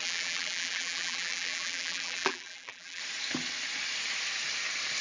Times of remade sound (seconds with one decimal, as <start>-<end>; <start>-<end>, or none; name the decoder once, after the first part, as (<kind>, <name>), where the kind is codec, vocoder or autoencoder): 0.0-3.0 (vocoder, BigVGAN v2)